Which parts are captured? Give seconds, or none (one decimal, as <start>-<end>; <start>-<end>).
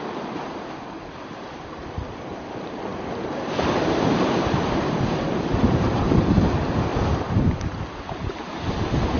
6.9-7.9